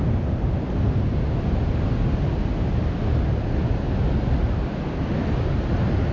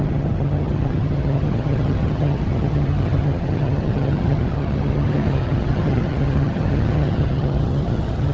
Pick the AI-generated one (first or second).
second